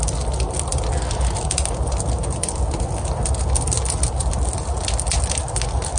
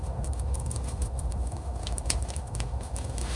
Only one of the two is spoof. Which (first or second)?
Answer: second